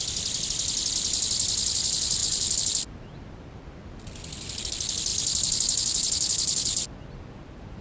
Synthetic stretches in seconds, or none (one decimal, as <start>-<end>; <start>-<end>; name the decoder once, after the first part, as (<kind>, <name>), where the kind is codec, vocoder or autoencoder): none